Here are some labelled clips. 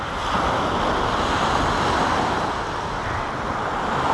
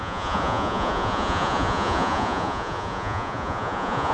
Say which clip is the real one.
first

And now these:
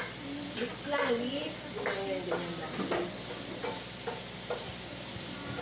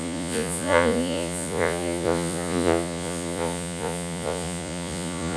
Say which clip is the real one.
first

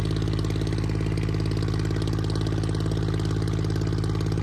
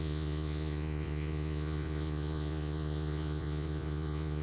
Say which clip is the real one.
first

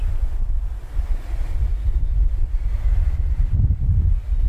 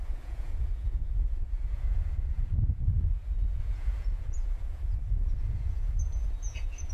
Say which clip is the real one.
first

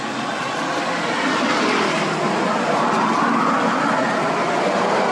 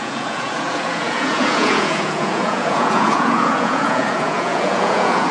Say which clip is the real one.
first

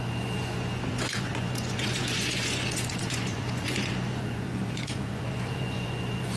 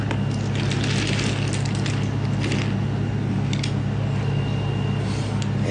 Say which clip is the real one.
second